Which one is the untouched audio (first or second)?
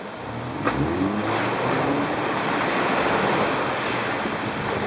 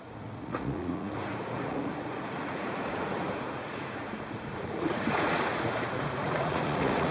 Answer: first